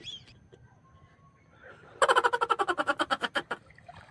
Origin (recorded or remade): recorded